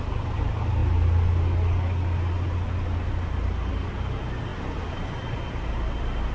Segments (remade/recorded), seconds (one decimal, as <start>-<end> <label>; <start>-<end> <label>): 0.0-6.3 recorded